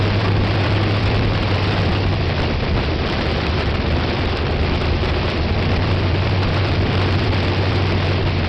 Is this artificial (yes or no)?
yes